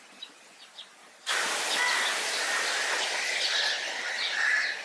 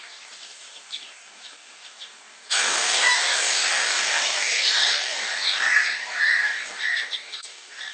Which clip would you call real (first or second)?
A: first